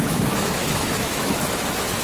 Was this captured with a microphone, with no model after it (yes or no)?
no